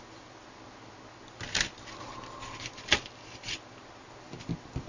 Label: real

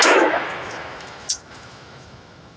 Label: fake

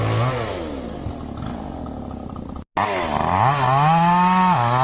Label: real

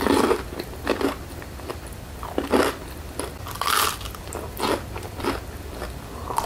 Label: real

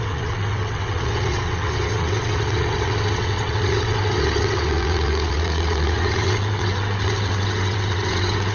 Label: fake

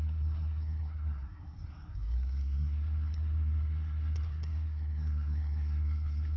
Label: fake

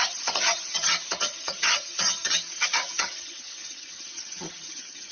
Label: fake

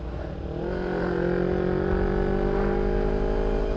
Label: real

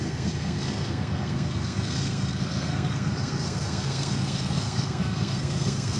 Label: fake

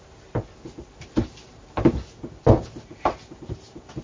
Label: real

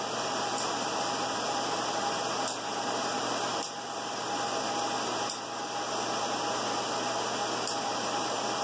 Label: real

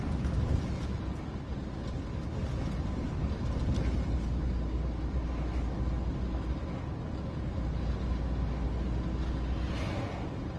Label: real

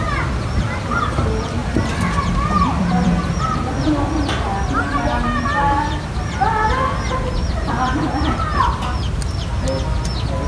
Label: real